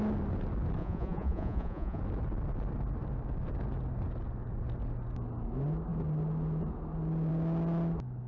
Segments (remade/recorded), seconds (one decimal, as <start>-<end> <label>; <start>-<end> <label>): 0.0-0.8 recorded; 0.8-2.0 remade; 2.0-8.3 recorded